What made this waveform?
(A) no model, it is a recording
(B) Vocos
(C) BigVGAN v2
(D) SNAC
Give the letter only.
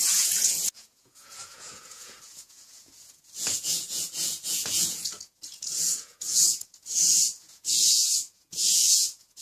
B